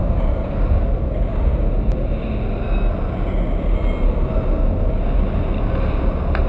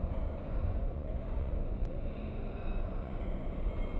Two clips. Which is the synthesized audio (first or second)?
second